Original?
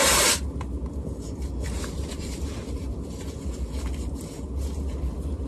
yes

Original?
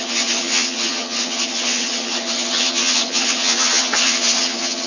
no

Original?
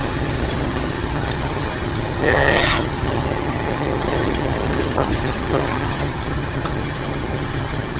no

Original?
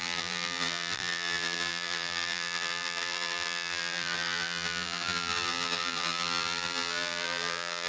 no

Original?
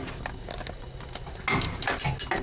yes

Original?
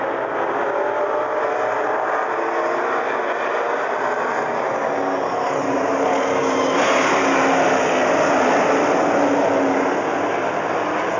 yes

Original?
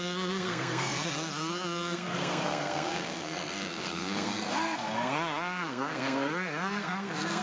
no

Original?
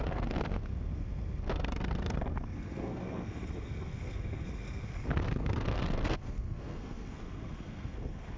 no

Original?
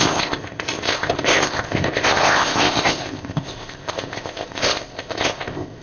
no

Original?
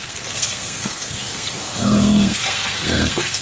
no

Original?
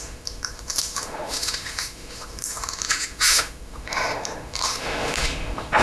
no